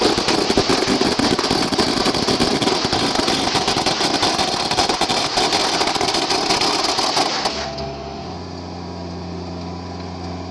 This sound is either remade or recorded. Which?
recorded